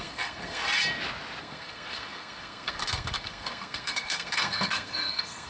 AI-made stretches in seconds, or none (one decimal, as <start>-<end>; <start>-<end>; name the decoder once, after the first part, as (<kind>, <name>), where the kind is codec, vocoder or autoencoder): 0.0-0.6 (codec, SNAC); 1.4-5.5